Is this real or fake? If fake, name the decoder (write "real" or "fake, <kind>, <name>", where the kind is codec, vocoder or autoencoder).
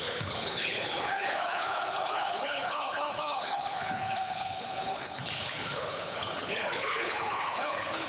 fake, codec, HILCodec